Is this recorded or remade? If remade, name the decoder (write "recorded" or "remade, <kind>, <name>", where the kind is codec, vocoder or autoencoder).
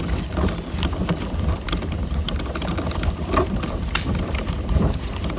recorded